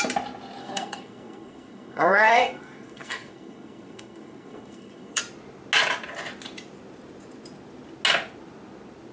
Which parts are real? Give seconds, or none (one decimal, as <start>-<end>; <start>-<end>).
0.0-0.6; 5.2-9.1